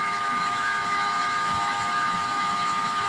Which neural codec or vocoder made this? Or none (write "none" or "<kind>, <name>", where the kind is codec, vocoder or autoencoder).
autoencoder, DAC-VAE